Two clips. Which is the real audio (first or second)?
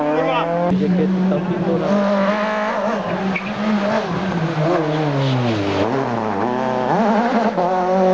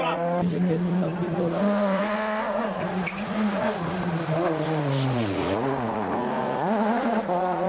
first